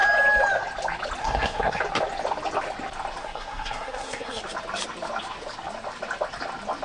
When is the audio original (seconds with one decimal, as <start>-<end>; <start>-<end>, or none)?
0.0-1.2; 1.8-3.2; 4.4-6.8